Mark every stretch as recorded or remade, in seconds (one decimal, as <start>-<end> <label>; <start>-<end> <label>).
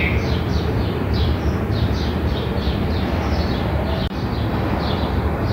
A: 0.0-0.5 recorded; 0.5-2.9 remade; 2.9-5.5 recorded